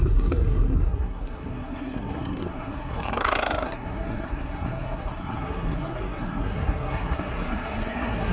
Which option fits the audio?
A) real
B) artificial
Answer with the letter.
B